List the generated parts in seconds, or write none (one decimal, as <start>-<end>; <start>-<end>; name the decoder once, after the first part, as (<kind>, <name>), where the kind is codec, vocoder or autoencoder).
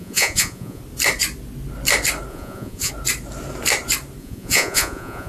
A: 0.0-0.8 (vocoder, Vocos); 2.3-2.9; 4.2-5.3